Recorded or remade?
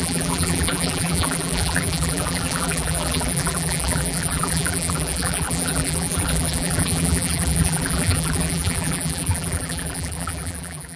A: remade